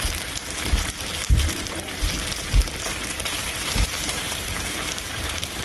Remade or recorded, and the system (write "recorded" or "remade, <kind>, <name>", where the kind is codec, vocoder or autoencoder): remade, vocoder, BigVGAN v2